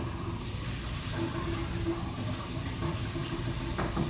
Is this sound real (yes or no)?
yes